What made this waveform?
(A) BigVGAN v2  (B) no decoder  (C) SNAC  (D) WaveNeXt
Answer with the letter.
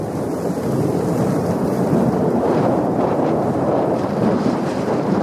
A